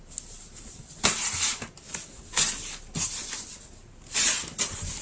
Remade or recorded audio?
recorded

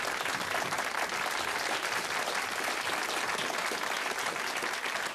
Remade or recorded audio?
recorded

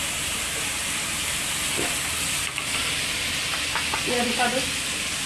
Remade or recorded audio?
recorded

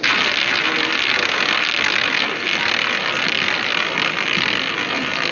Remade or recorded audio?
recorded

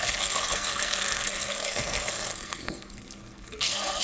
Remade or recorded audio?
remade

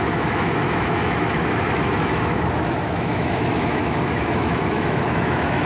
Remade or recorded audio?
remade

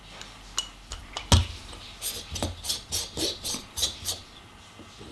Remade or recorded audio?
recorded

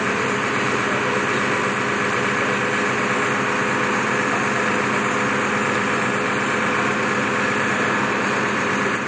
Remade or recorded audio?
recorded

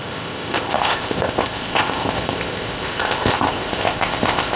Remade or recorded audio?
remade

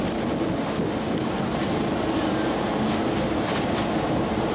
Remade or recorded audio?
recorded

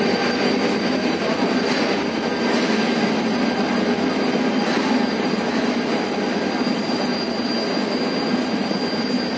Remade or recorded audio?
recorded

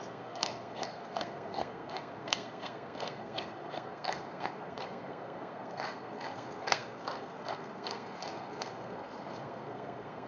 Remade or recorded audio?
remade